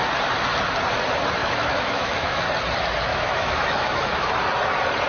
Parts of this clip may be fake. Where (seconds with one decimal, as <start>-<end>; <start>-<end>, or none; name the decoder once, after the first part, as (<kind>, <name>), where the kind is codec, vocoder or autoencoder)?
1.4-2.4 (autoencoder, DAC-VAE); 3.1-4.3